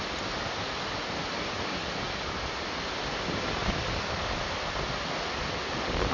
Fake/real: real